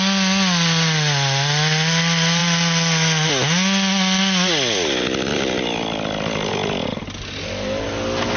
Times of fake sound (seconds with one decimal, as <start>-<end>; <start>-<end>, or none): none